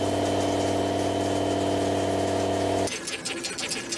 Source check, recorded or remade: recorded